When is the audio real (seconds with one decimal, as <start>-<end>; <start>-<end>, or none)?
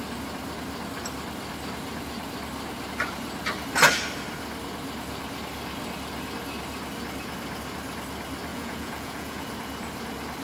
0.0-8.5; 9.4-10.4